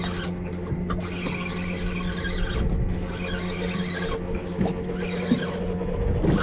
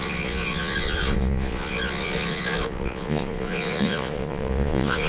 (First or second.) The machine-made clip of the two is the second